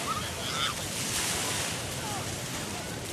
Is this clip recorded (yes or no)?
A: yes